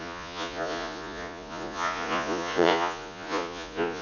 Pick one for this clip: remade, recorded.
remade